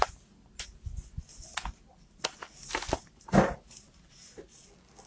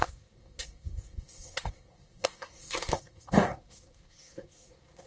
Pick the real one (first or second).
first